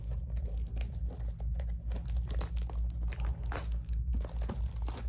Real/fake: real